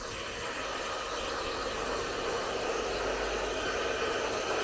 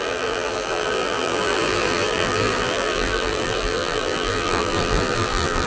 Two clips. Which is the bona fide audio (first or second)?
first